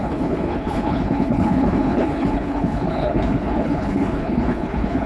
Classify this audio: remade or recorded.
remade